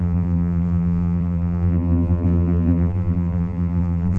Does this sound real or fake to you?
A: fake